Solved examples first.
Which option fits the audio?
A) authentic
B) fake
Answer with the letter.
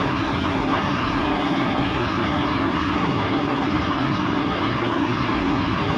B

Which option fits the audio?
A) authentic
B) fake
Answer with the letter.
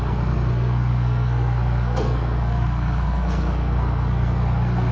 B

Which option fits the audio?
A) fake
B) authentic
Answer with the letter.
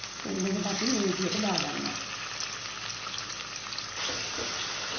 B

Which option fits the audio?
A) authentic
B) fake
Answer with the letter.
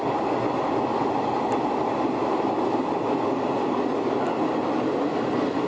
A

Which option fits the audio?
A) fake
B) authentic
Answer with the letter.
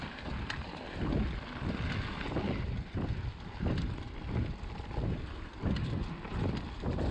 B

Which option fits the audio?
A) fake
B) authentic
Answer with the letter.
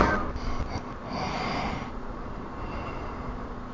B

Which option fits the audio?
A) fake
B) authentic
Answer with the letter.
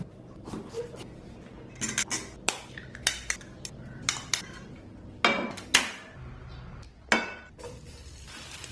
B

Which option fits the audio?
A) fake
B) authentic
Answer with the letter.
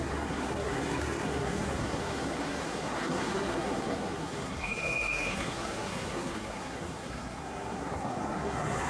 A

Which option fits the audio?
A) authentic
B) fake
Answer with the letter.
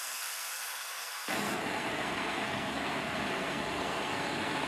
B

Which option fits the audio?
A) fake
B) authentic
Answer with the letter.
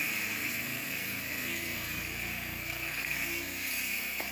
A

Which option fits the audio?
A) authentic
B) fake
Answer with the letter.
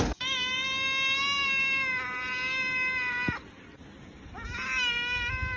A